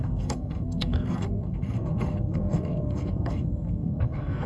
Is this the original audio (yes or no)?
no